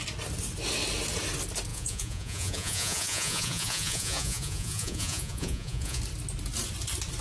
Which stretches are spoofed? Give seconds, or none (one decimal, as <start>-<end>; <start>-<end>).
1.7-6.0